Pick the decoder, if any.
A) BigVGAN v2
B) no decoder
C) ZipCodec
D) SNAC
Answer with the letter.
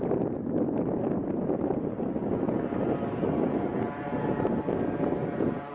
B